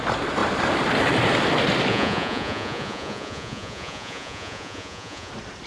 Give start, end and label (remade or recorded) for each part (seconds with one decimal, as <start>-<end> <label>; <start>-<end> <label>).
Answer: 0.0-1.9 recorded; 1.9-5.3 remade; 5.3-5.7 recorded